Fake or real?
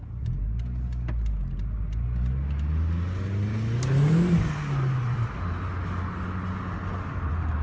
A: real